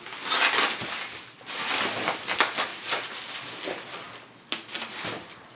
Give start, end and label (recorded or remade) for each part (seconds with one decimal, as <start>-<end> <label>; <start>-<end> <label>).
0.0-5.5 recorded